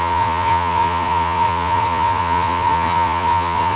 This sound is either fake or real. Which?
fake